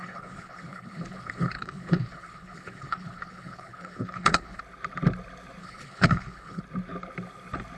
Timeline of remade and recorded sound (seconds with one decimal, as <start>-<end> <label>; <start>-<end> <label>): 0.0-4.6 remade; 4.6-5.6 recorded; 5.6-6.6 remade; 6.6-7.8 recorded